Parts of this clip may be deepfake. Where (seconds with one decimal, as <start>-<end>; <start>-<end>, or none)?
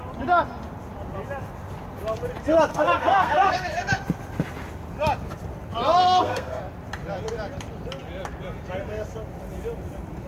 2.7-3.9; 6.0-6.6